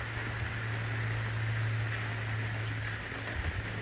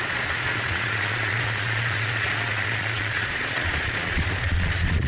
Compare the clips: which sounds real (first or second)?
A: first